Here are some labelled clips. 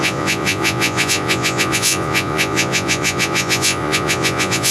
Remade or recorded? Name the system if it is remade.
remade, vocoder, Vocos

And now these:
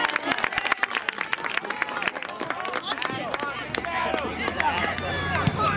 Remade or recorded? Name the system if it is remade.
recorded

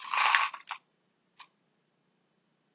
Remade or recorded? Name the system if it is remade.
recorded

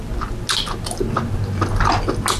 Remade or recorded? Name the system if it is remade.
recorded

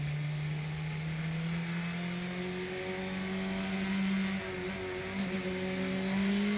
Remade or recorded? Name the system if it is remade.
recorded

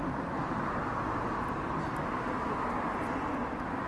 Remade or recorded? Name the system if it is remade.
recorded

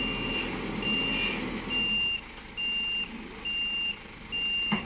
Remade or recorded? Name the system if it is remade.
recorded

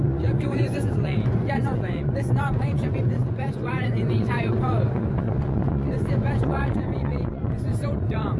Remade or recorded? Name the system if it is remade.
remade, vocoder, Vocos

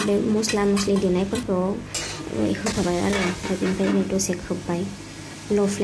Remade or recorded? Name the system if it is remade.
recorded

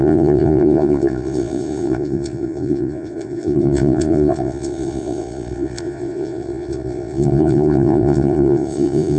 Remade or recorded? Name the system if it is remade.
remade, vocoder, Vocos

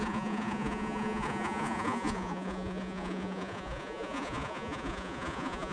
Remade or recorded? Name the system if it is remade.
remade, vocoder, Vocos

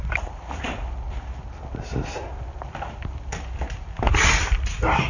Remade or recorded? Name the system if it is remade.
recorded